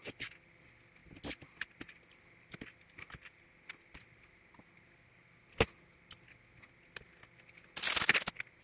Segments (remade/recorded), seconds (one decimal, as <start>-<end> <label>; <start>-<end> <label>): 0.0-8.6 recorded